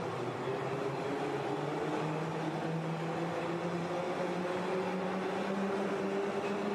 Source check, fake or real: real